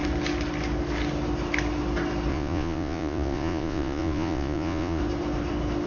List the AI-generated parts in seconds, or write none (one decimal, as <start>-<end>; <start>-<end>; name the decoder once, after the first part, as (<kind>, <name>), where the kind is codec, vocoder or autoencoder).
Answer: 2.3-5.0 (vocoder, Vocos)